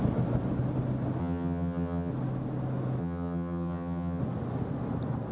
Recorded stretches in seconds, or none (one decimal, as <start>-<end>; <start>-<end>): 0.0-1.2; 2.1-3.0; 4.2-5.3